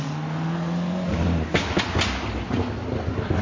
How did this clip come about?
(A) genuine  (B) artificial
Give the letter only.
A